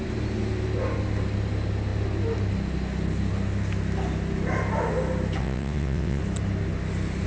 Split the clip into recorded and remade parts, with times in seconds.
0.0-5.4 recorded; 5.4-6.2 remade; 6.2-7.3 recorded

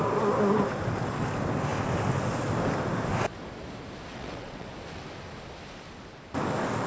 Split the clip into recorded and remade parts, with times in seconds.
0.0-4.1 recorded; 4.1-4.7 remade; 4.7-6.9 recorded

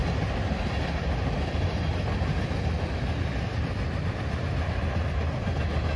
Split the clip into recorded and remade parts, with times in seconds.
0.0-6.0 recorded

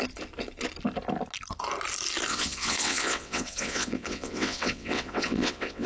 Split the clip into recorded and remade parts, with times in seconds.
0.0-2.3 recorded; 2.3-5.9 remade

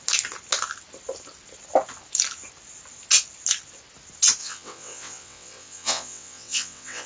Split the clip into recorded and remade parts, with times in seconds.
0.0-4.4 recorded; 4.4-7.1 remade

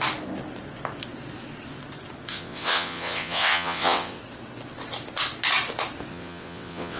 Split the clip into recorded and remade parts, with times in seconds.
0.0-2.3 recorded; 2.3-4.2 remade; 4.2-6.1 recorded; 6.1-7.0 remade

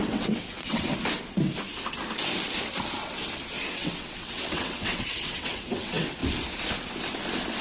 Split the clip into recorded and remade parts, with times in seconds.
0.0-0.9 remade; 0.9-3.7 recorded; 3.7-6.2 remade; 6.2-7.6 recorded